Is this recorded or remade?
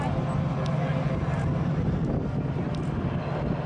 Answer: recorded